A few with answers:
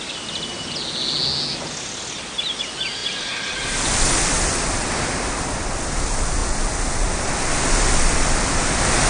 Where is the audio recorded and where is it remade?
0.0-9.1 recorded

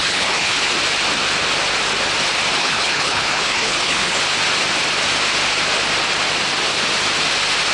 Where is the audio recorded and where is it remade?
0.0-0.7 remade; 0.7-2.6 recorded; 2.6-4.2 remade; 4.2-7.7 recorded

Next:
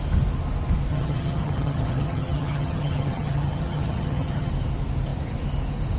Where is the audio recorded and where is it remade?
0.0-0.9 recorded; 0.9-4.5 remade; 4.5-6.0 recorded